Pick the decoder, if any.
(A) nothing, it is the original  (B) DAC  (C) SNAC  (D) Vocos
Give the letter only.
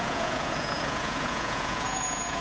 D